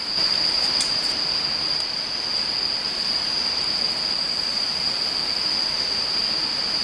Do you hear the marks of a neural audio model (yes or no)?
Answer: no